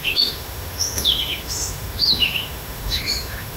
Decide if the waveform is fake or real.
fake